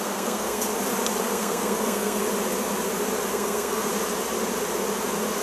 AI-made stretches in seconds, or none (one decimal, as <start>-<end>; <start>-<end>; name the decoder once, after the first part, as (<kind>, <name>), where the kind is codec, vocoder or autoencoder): 0.0-0.7 (codec, SNAC); 1.2-2.2; 3.3-3.9